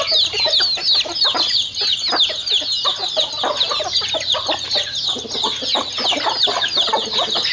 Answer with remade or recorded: recorded